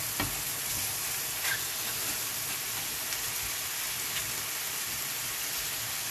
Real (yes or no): yes